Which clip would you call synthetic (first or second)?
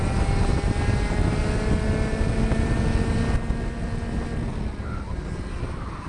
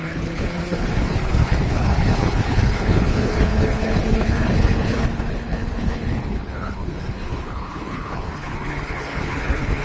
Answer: second